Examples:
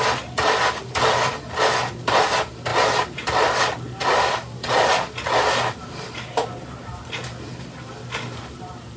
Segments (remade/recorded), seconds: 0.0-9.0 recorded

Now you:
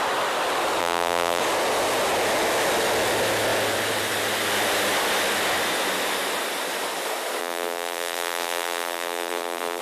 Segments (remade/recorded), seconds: 0.0-0.8 recorded; 0.8-1.4 remade; 1.4-7.4 recorded; 7.4-9.8 remade

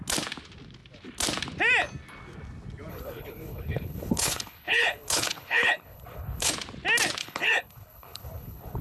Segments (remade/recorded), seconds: 0.0-2.9 recorded; 2.9-6.5 remade; 6.5-7.2 recorded; 7.2-8.8 remade

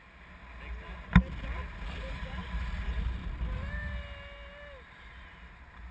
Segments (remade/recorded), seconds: 0.0-5.9 recorded

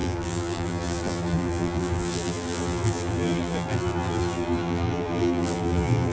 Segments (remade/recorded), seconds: 0.0-6.1 remade

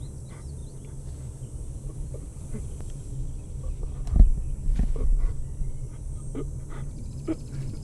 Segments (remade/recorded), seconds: 0.0-0.6 remade; 0.6-1.9 recorded; 1.9-4.3 remade; 4.3-5.2 recorded; 5.2-7.8 remade

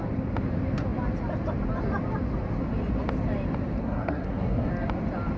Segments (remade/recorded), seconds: 0.0-3.8 recorded; 3.8-4.7 remade; 4.7-5.4 recorded

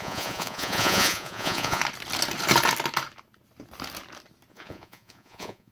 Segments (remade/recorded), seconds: 0.0-1.8 remade; 1.8-4.5 recorded; 4.5-5.7 remade